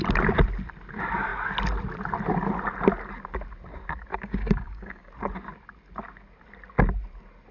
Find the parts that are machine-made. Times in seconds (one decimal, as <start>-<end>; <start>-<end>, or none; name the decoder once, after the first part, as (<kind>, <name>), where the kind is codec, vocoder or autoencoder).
4.1-5.1 (codec, DAC)